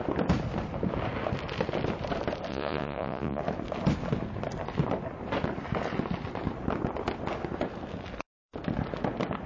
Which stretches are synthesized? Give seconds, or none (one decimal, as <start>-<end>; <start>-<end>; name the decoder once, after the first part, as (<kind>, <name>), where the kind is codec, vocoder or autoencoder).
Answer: 2.5-3.4 (vocoder, Vocos)